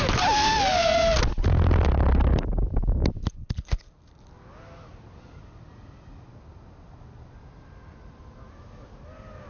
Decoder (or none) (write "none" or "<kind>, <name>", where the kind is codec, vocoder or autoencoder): none